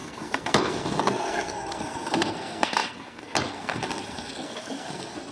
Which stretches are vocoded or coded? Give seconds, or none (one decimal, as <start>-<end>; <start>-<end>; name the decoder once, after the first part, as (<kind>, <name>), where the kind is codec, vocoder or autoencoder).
0.0-5.3 (codec, SNAC)

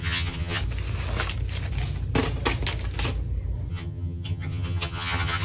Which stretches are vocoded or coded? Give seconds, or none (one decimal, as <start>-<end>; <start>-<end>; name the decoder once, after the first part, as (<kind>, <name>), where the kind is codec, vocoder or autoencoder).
0.0-0.6 (vocoder, HiFi-GAN); 3.7-5.4